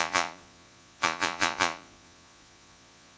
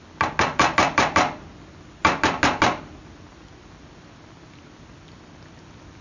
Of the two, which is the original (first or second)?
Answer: second